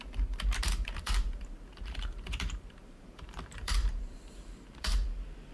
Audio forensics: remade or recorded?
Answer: remade